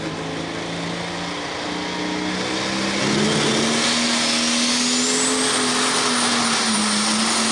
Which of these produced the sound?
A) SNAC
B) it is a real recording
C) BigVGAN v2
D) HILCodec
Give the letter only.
B